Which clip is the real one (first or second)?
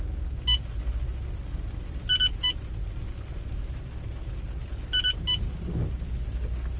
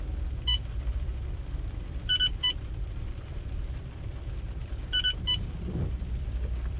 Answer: first